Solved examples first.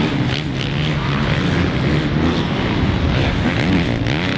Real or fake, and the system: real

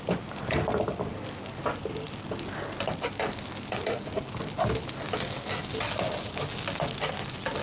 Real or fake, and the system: real